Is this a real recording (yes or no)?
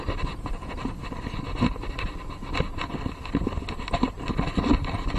yes